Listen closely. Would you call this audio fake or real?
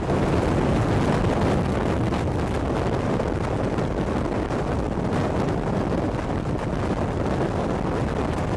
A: real